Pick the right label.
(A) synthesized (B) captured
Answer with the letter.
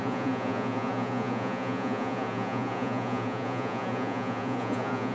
A